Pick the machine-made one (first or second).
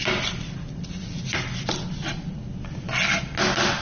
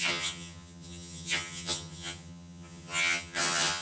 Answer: second